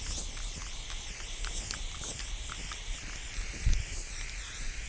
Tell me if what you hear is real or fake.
real